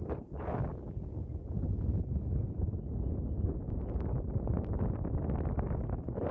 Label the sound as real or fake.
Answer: real